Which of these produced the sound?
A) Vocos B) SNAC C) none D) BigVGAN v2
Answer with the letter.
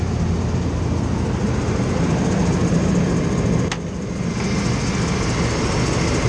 C